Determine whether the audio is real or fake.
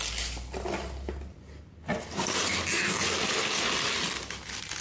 real